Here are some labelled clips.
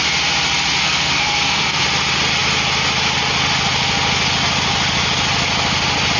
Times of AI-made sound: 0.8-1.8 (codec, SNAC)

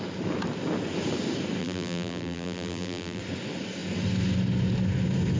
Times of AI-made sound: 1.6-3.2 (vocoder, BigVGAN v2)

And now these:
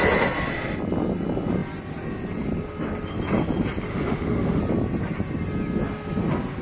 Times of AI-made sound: 3.9-4.6 (autoencoder, DAC-VAE)

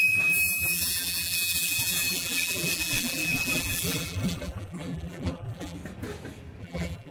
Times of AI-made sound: 0.0-5.8 (vocoder, BigVGAN v2); 6.6-7.1

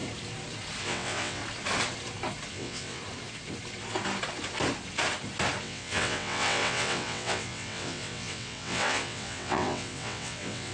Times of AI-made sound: 0.8-1.4 (vocoder, WaveNeXt); 2.5-3.0; 5.6-10.7

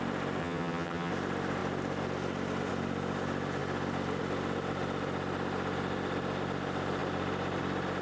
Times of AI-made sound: 0.4-1.1 (vocoder, HiFi-GAN)

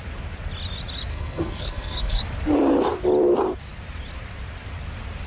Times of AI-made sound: 1.1-2.2 (codec, SNAC)

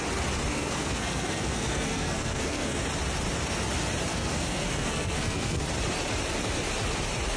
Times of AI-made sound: 0.5-2.8 (codec, SNAC); 4.1-5.6